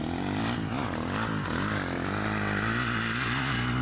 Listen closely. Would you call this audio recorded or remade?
recorded